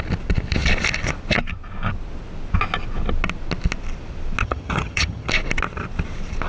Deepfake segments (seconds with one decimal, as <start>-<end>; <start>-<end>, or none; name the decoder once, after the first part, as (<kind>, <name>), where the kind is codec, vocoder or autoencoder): 4.4-5.3 (vocoder, HiFi-GAN)